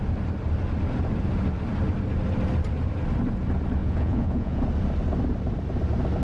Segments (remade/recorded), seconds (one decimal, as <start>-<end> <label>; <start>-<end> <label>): 0.0-3.8 recorded; 3.8-4.6 remade; 4.6-6.2 recorded